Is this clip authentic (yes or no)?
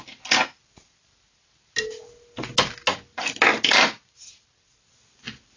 yes